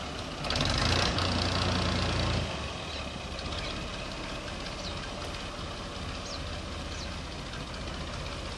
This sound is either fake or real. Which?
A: real